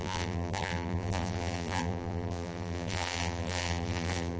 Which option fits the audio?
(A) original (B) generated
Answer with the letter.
B